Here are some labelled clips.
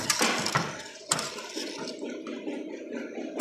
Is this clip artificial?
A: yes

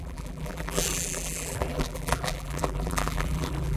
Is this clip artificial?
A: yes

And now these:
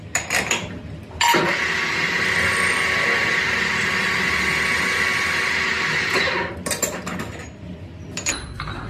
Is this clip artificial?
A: no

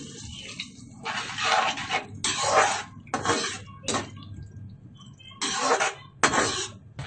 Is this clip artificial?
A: no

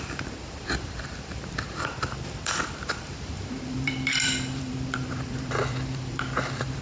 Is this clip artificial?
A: yes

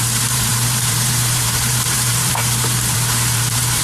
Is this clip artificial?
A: yes